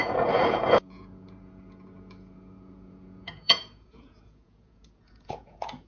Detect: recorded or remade remade